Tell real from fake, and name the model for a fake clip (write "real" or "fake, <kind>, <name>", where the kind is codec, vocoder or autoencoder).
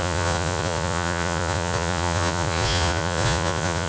fake, vocoder, Vocos